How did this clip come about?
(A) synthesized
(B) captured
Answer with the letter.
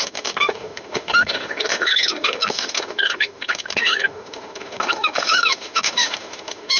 A